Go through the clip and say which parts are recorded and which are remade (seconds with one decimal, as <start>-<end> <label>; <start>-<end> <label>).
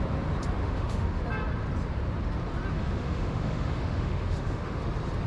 0.0-0.6 recorded; 0.6-1.2 remade; 1.2-2.8 recorded; 2.8-4.8 remade; 4.8-5.3 recorded